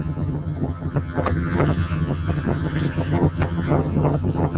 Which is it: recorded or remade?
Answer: remade